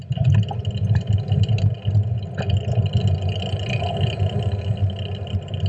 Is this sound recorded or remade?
recorded